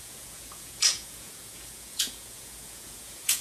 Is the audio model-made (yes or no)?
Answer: yes